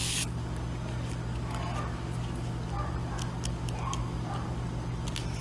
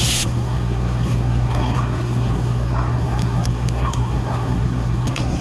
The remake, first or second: second